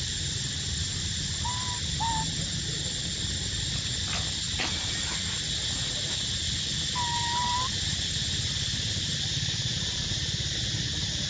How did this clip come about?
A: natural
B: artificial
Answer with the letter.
A